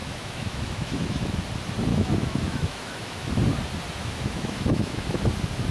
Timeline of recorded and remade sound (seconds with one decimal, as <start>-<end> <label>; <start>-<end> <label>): 0.0-1.4 remade; 1.4-1.9 recorded; 1.9-3.3 remade; 3.3-4.0 recorded; 4.0-5.2 remade; 5.2-5.7 recorded